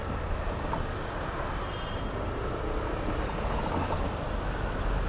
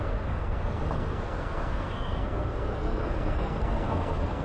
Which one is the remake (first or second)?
second